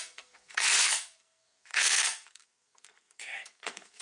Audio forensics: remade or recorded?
remade